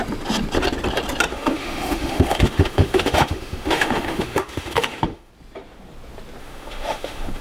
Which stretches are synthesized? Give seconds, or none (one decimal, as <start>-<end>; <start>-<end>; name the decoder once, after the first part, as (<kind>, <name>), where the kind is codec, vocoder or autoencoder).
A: 1.3-5.3 (autoencoder, DAC-VAE); 6.4-7.4